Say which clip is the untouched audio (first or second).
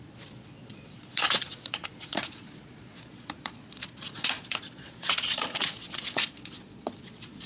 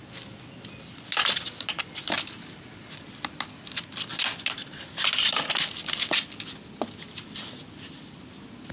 second